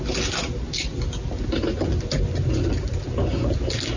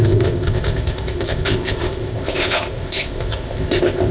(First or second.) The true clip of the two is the first